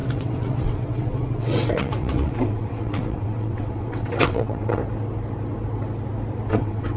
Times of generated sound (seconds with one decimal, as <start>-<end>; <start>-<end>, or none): 0.0-4.8; 6.5-7.0